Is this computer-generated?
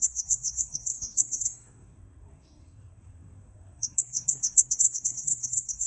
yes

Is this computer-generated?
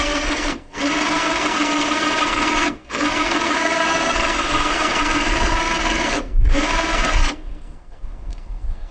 yes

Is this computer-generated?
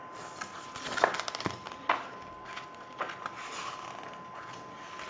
no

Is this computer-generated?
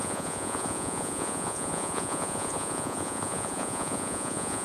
yes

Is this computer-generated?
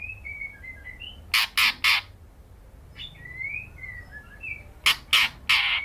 no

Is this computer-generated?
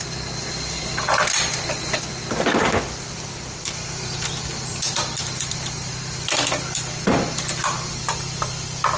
no